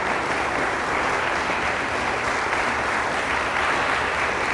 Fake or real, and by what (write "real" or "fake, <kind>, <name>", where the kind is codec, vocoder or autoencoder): real